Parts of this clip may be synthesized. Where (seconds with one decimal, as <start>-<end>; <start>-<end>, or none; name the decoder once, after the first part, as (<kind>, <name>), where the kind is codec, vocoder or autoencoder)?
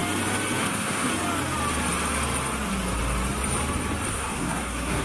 0.6-1.1 (codec, SNAC); 4.1-5.0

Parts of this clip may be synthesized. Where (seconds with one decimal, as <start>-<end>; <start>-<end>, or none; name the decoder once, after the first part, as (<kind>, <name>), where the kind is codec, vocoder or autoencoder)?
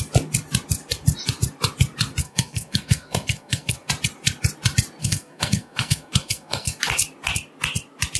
2.2-3.9 (codec, SNAC); 5.0-6.8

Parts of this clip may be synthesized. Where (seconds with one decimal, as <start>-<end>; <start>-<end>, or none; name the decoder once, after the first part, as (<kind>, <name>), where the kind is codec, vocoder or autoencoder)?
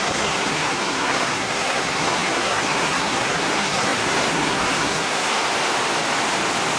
0.0-5.4 (codec, SNAC)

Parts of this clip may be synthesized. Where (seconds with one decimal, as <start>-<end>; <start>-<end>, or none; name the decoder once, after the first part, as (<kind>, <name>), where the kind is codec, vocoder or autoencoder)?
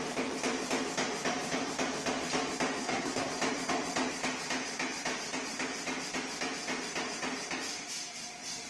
2.8-3.3 (codec, SNAC)